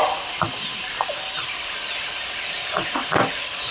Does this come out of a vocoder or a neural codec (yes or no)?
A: no